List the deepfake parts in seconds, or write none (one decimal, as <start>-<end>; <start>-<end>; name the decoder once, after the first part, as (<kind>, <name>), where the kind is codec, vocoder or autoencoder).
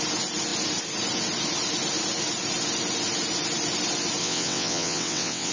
4.2-5.5 (vocoder, WaveNeXt)